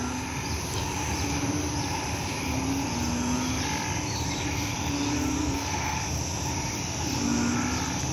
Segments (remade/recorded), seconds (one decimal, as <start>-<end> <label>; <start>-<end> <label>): 0.0-5.4 recorded; 5.4-6.0 remade; 6.0-8.1 recorded